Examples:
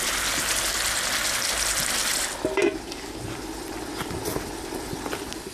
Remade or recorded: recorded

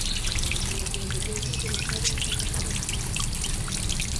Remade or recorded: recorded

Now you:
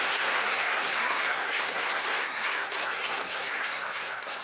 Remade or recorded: remade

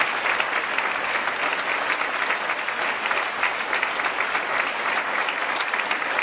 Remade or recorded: recorded